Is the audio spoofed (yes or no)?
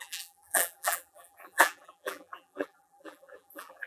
yes